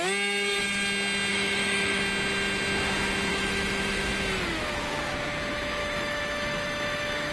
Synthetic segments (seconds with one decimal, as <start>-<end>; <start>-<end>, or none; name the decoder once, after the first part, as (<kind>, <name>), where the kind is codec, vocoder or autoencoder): 1.3-2.0 (autoencoder, DAC-VAE); 3.3-4.1; 5.8-7.3